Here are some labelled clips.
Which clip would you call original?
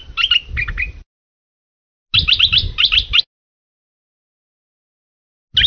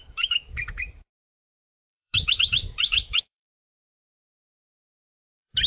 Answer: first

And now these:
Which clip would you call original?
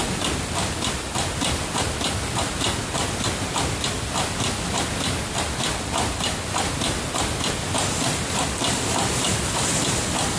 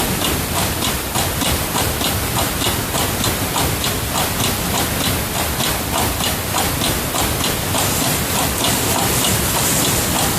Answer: second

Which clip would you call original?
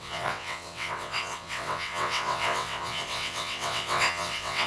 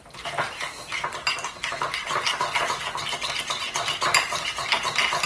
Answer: second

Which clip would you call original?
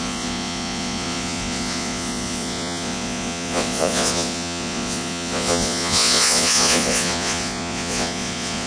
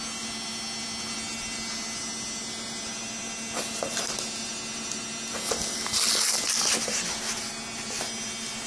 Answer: second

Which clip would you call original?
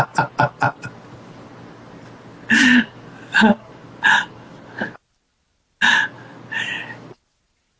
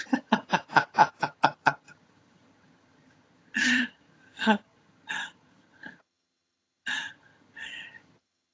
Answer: first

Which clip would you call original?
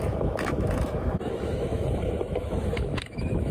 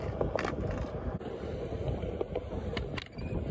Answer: second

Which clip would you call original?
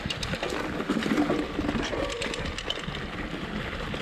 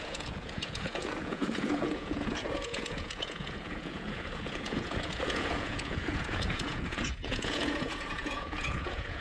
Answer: first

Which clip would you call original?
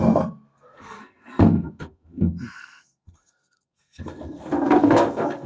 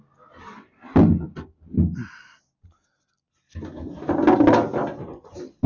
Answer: second